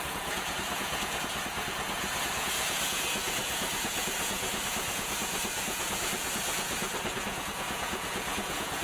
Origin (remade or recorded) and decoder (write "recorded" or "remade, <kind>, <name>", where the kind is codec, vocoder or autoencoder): remade, vocoder, Vocos